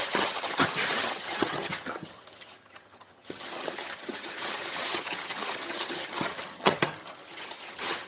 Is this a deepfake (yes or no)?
yes